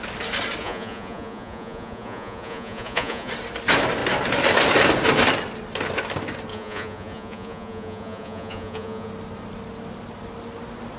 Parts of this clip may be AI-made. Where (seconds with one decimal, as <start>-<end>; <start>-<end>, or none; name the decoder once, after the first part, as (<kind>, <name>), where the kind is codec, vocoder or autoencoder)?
0.6-3.3 (vocoder, Vocos); 6.5-9.1

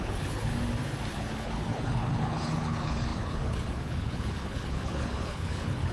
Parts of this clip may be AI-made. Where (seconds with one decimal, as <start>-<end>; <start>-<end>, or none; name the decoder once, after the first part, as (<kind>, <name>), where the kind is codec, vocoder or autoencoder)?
0.0-0.5 (codec, HILCodec); 1.1-5.9